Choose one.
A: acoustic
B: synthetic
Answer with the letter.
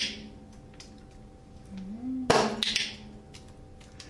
A